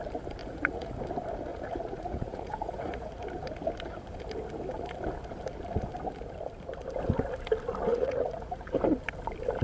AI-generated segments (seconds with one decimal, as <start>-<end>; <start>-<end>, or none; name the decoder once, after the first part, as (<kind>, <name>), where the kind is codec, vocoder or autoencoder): 0.4-1.0 (vocoder, Vocos); 1.5-3.1; 7.9-8.7